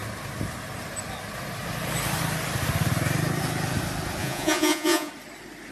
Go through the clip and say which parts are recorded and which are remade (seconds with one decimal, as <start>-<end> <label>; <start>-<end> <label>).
0.0-4.2 recorded; 4.2-5.1 remade; 5.1-5.7 recorded